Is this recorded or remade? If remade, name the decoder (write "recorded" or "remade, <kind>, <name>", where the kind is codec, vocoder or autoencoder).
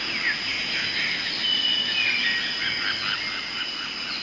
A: recorded